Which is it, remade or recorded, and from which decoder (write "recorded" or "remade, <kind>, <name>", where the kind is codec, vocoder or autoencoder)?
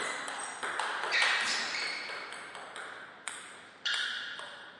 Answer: recorded